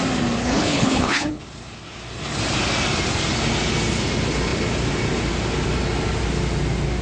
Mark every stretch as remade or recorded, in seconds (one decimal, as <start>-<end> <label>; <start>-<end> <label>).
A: 0.0-0.4 recorded; 0.4-1.4 remade; 1.4-7.0 recorded